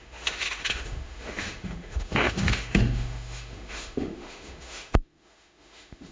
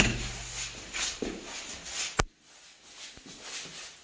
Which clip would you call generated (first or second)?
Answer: first